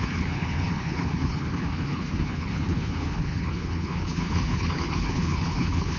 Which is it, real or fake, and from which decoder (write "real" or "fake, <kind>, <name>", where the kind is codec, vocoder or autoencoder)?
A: fake, codec, HILCodec